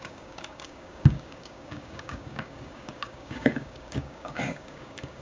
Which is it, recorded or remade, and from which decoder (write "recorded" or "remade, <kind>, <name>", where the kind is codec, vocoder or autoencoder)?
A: remade, codec, DAC